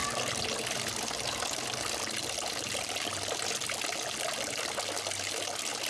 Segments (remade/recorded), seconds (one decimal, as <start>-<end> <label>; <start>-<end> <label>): 0.0-5.9 recorded